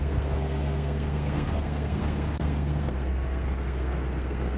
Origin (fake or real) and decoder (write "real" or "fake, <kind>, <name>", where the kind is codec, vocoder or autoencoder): fake, codec, SNAC